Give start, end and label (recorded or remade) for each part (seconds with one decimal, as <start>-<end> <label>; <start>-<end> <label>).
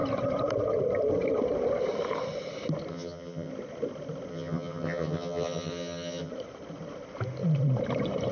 0.0-2.9 recorded; 2.9-3.5 remade; 3.5-4.3 recorded; 4.3-6.3 remade; 6.3-8.3 recorded